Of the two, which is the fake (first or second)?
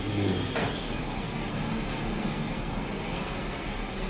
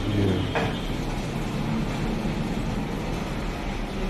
first